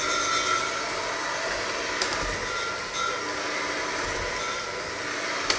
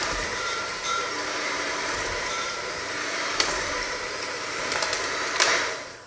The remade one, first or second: second